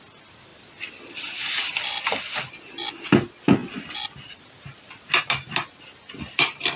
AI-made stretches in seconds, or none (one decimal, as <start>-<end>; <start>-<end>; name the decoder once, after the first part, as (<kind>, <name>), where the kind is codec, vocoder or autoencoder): none